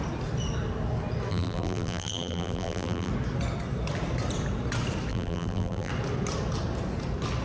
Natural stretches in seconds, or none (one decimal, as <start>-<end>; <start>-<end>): 0.0-1.3; 3.1-5.1; 5.9-7.4